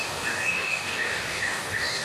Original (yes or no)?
no